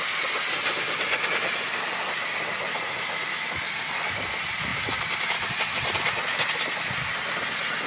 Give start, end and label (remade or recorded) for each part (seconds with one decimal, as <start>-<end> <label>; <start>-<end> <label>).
0.0-7.9 recorded